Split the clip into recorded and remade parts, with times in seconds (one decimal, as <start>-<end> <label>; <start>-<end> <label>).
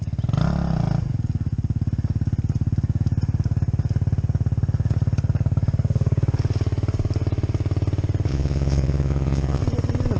0.0-8.3 recorded; 8.3-9.6 remade; 9.6-10.2 recorded